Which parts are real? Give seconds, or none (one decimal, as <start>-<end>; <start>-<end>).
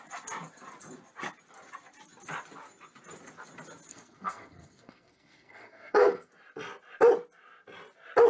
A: 0.0-3.9; 6.3-8.3